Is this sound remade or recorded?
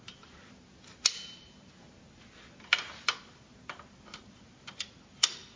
recorded